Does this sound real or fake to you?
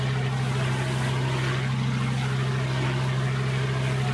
real